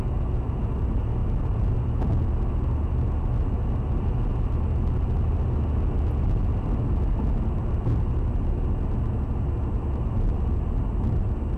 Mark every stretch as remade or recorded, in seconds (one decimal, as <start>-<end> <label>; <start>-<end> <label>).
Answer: 0.0-11.6 recorded